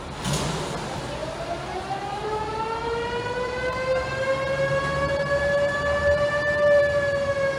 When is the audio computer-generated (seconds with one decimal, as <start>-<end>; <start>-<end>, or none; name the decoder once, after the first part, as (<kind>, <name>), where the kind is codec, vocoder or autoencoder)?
1.2-1.8 (vocoder, BigVGAN v2); 2.2-6.8

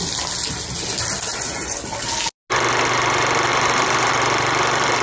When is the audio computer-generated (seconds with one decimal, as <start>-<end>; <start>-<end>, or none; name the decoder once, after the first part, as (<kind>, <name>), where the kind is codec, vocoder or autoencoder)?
3.5-4.1 (vocoder, BigVGAN v2)